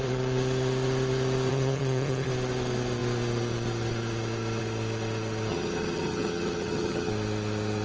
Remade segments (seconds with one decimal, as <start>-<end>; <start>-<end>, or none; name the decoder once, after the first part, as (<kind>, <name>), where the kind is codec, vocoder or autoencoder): 1.5-2.3 (vocoder, HiFi-GAN); 5.5-7.1

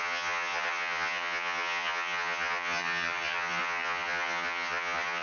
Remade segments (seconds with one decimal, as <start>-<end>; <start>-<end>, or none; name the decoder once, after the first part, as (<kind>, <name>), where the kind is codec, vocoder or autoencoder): 0.0-5.2 (vocoder, HiFi-GAN)

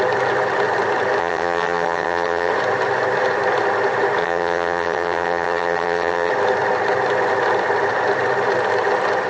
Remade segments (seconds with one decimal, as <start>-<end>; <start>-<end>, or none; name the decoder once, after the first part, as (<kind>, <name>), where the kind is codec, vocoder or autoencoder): 1.2-2.5 (vocoder, HiFi-GAN); 4.2-6.3